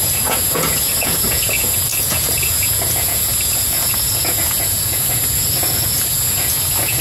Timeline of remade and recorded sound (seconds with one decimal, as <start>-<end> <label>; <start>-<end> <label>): 0.0-7.0 remade